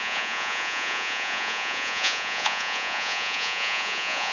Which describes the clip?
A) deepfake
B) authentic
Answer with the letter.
A